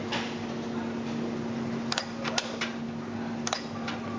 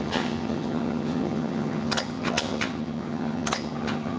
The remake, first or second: second